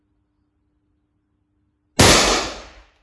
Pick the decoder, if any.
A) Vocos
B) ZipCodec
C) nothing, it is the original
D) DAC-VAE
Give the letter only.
C